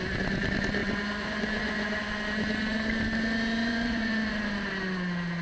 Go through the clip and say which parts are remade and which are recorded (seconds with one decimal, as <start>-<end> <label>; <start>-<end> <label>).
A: 0.0-0.8 recorded; 0.8-2.0 remade; 2.0-3.6 recorded; 3.6-4.3 remade; 4.3-5.4 recorded

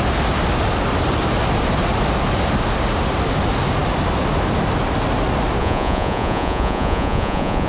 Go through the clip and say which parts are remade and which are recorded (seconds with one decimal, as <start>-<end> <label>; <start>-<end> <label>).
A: 0.0-5.6 recorded; 5.6-7.7 remade

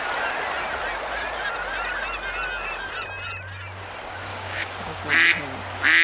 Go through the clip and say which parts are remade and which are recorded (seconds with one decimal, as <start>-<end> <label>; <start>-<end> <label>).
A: 0.0-4.3 recorded; 4.3-5.0 remade; 5.0-6.0 recorded